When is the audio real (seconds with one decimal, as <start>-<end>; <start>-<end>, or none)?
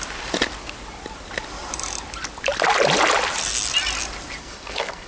0.0-4.4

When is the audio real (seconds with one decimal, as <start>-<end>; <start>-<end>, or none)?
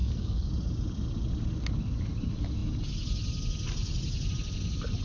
0.5-5.0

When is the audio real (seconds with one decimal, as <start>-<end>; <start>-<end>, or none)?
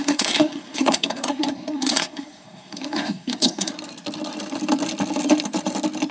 3.7-6.1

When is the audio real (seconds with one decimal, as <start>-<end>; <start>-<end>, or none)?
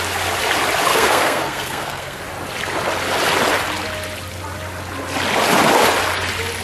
0.0-0.9; 2.2-6.6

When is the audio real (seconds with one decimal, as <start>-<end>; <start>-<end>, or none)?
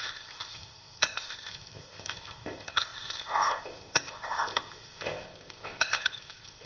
none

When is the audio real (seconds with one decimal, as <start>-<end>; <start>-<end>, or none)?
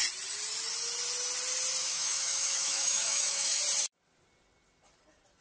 0.0-1.8; 3.6-5.4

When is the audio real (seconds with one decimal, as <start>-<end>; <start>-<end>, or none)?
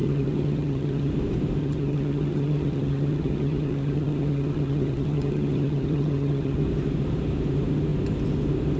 1.1-1.6; 6.6-8.8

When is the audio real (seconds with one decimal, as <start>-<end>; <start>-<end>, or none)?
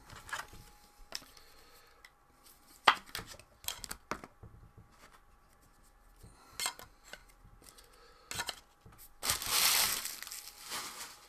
0.0-11.3